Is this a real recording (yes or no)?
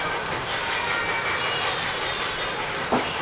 yes